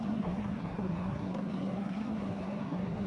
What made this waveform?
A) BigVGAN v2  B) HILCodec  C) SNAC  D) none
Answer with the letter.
C